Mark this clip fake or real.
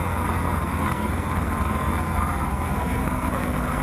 fake